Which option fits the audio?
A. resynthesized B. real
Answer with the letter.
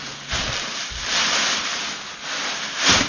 B